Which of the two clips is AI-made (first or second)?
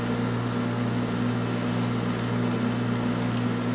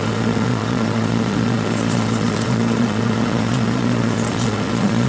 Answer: second